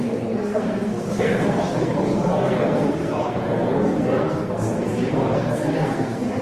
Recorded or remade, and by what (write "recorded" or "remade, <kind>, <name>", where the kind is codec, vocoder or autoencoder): remade, codec, SNAC